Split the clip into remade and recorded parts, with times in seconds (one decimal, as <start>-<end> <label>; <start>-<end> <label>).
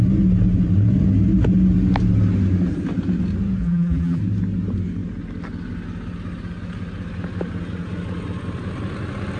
0.0-3.6 recorded; 3.6-4.2 remade; 4.2-9.4 recorded